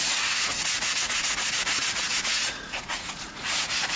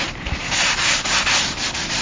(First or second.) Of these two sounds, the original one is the second